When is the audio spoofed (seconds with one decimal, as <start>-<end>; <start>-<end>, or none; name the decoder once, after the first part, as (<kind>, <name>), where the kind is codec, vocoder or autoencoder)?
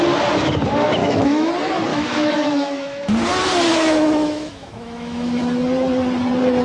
1.0-1.5 (autoencoder, DAC-VAE); 1.9-3.1; 3.7-5.4